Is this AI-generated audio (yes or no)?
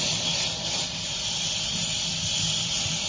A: no